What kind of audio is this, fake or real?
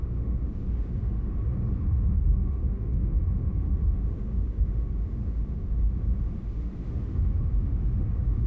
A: fake